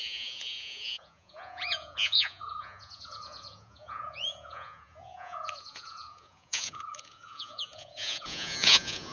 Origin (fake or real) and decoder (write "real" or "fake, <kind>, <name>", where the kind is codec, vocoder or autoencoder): fake, vocoder, Vocos